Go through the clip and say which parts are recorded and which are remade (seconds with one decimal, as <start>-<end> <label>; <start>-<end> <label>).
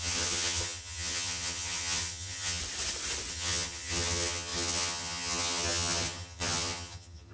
0.0-2.6 remade; 2.6-3.3 recorded; 3.3-7.3 remade